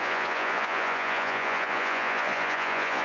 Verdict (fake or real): fake